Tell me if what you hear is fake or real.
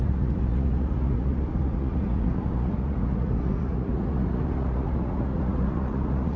fake